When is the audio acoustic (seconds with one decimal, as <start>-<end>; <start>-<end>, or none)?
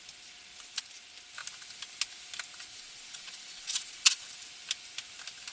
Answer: 0.0-2.7; 4.3-5.5